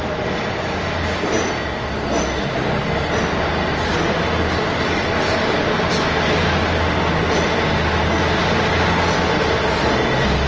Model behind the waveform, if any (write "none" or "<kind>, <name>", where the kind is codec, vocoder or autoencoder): none